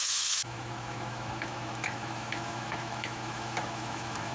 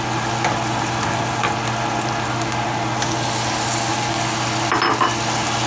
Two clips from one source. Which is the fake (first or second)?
first